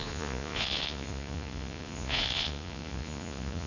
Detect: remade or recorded remade